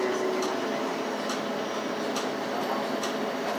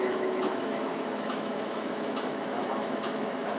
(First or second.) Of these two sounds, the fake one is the second